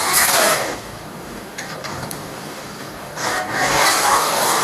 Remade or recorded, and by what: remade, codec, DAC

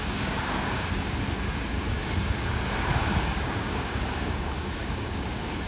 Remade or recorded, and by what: remade, codec, DAC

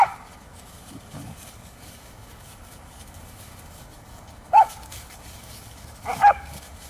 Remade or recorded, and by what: remade, codec, DAC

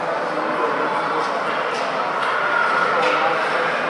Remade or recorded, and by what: recorded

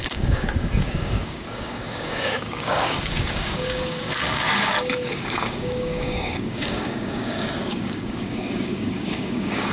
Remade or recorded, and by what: remade, codec, DAC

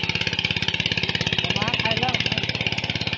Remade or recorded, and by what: recorded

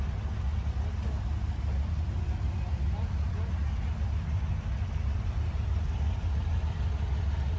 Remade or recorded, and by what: recorded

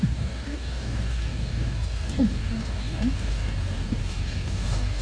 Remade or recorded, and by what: remade, codec, DAC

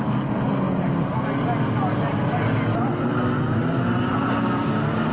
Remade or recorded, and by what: recorded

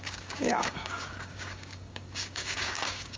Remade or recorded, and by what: remade, codec, DAC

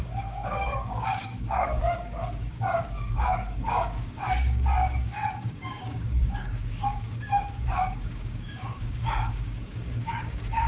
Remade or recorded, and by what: remade, codec, DAC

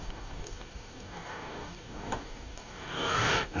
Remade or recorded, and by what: remade, codec, DAC